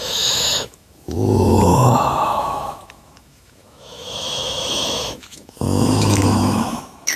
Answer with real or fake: fake